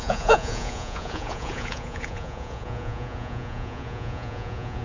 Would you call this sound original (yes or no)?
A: no